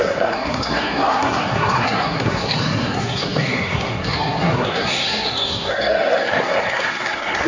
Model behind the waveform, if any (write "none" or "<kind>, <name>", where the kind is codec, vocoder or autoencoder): codec, SNAC